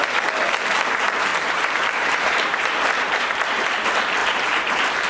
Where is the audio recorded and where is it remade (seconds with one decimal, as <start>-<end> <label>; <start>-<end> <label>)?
0.0-1.3 recorded; 1.3-3.8 remade; 3.8-4.2 recorded; 4.2-5.1 remade